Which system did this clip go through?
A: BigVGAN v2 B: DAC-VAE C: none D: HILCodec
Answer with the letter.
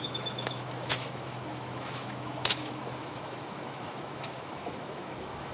B